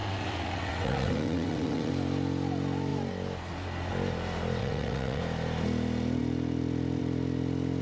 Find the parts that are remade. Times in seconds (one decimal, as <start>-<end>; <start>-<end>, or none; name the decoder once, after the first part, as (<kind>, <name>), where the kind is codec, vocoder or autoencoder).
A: 0.0-1.9 (vocoder, WaveNeXt); 4.6-5.2